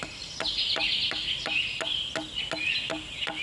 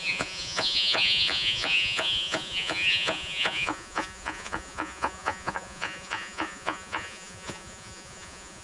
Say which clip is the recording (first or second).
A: first